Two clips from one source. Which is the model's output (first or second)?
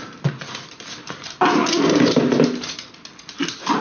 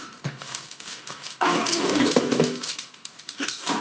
second